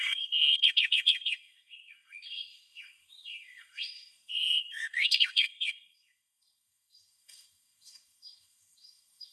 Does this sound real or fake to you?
fake